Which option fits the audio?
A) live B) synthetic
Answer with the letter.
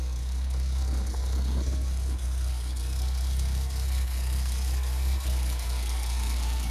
B